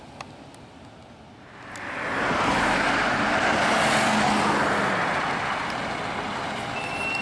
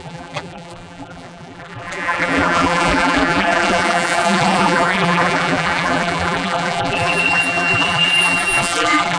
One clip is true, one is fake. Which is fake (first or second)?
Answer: second